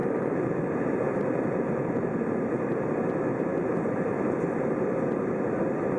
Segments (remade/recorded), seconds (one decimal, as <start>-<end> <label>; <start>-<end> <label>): 0.0-2.9 remade; 2.9-3.5 recorded; 3.5-4.8 remade; 4.8-6.0 recorded